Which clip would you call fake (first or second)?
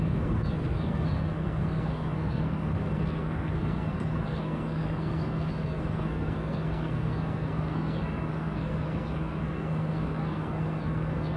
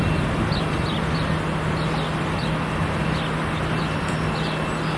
first